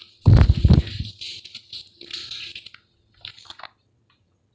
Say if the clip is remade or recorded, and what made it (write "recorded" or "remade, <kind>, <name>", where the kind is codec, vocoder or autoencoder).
recorded